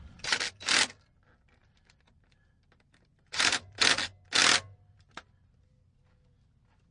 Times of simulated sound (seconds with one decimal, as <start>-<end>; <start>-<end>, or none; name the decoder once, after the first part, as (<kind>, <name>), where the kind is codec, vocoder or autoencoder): 1.6-3.9 (vocoder, BigVGAN v2)